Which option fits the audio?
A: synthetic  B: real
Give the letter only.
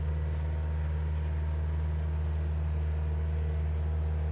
B